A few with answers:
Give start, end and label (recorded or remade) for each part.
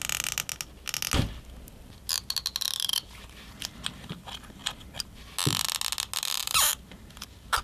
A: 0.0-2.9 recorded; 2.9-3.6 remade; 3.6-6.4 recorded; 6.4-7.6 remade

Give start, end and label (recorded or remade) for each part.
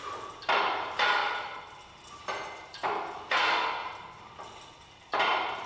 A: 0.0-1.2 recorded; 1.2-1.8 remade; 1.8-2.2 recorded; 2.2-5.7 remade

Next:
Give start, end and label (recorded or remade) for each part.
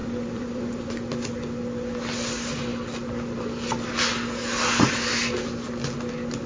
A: 0.0-0.9 remade; 0.9-6.5 recorded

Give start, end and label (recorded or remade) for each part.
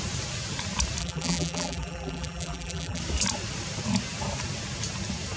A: 0.0-1.0 recorded; 1.0-3.0 remade; 3.0-5.4 recorded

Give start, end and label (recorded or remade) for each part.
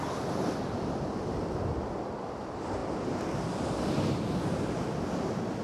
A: 0.0-5.6 recorded